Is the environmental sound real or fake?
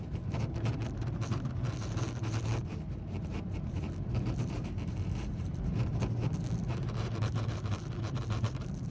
fake